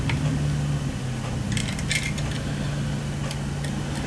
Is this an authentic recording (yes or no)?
yes